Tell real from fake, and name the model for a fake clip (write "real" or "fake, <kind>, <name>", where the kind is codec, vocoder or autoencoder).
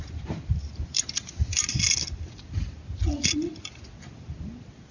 real